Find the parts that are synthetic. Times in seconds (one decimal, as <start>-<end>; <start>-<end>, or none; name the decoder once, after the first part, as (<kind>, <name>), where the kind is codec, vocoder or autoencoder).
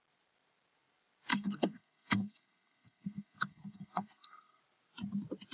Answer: 1.3-4.6 (codec, SNAC)